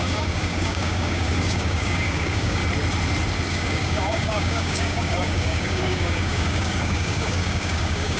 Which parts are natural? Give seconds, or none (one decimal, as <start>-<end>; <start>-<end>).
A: 2.6-3.5